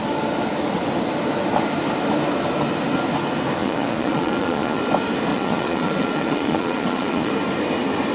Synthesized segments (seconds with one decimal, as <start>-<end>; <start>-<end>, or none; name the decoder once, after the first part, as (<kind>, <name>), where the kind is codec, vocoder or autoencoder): 3.6-4.8 (vocoder, Vocos); 5.3-7.3